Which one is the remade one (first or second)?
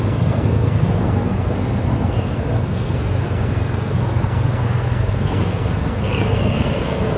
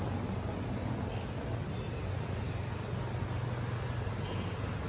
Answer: first